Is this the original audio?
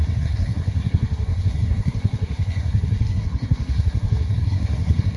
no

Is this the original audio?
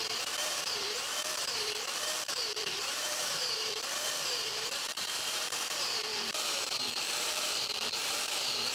no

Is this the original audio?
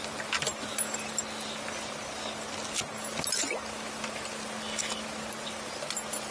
yes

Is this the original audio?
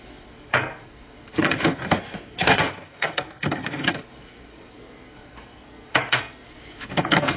no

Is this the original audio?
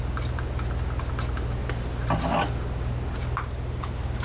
yes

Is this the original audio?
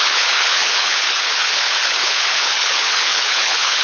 no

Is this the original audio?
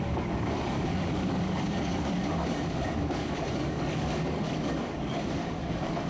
no